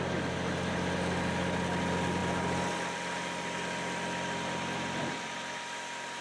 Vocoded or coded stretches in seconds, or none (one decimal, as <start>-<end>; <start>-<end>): none